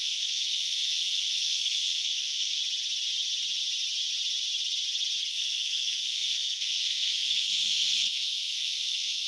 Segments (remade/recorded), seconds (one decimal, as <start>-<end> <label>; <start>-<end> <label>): 0.0-2.6 remade; 2.6-5.3 recorded; 5.3-9.3 remade